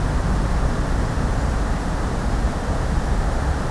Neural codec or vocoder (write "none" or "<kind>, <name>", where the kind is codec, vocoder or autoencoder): none